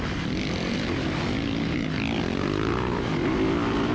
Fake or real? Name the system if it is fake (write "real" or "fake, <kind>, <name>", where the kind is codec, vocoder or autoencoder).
real